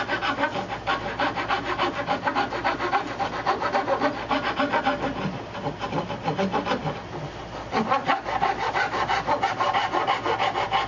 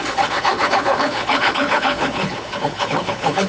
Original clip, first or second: first